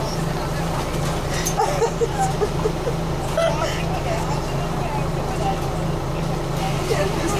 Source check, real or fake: real